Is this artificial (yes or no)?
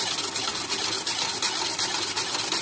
no